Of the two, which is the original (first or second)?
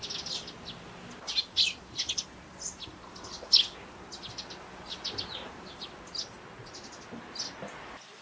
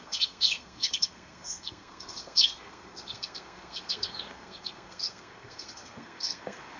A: first